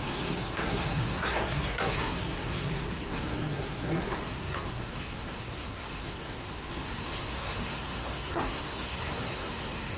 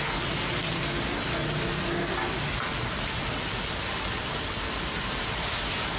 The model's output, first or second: first